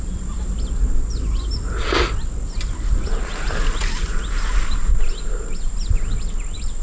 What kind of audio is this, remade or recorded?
recorded